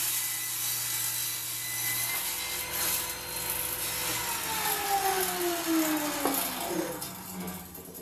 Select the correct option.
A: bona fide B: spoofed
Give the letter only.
A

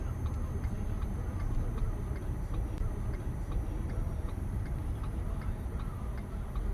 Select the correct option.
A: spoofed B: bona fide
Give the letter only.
A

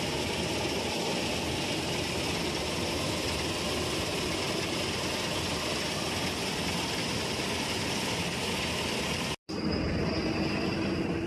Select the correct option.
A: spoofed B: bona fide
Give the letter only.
B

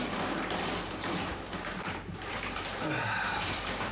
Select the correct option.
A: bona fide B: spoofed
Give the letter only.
B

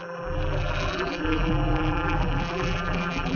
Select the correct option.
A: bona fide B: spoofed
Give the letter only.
B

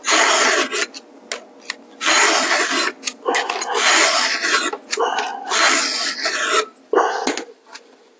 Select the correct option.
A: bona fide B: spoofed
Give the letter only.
A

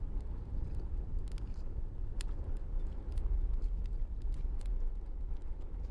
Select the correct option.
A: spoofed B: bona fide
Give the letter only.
B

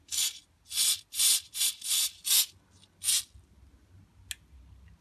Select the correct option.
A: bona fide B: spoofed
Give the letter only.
A